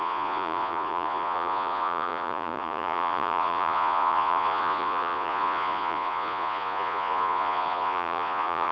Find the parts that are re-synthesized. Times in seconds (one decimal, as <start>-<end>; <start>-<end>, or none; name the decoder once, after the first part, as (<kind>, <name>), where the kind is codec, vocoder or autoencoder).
0.0-8.7 (vocoder, Vocos)